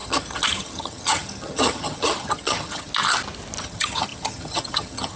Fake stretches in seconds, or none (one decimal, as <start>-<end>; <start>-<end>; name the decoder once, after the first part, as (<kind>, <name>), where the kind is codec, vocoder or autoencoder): 0.0-2.9 (vocoder, HiFi-GAN); 3.6-5.2